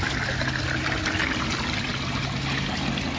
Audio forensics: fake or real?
real